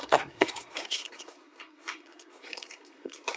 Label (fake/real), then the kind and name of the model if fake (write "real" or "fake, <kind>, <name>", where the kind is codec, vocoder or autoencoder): fake, codec, SNAC